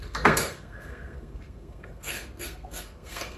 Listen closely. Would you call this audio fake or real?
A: fake